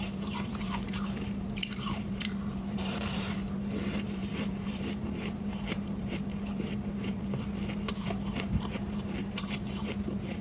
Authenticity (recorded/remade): remade